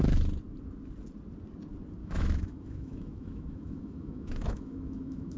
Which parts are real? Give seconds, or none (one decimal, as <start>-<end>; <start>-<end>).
0.0-2.0